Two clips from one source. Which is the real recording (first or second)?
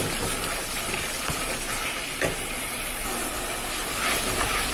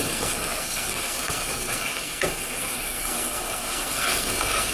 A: first